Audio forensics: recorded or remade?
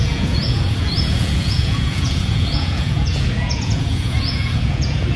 remade